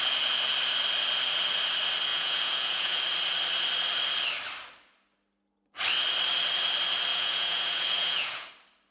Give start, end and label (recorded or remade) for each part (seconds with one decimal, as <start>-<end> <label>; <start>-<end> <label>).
0.0-2.1 recorded; 2.1-3.0 remade; 3.0-7.1 recorded; 7.1-8.5 remade; 8.5-8.9 recorded